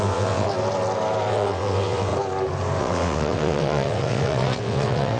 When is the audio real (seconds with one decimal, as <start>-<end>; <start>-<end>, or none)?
0.5-1.3; 2.1-2.8